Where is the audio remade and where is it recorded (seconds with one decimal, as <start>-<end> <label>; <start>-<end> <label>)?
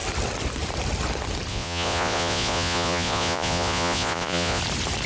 0.0-1.5 recorded; 1.5-4.6 remade; 4.6-5.1 recorded